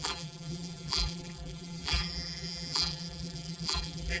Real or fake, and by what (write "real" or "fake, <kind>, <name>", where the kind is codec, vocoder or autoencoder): fake, vocoder, BigVGAN v2